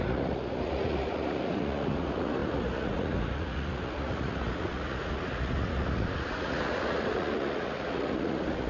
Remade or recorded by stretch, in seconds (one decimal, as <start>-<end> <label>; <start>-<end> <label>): 0.0-8.7 remade